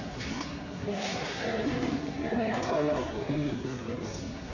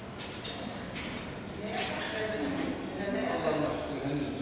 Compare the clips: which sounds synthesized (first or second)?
first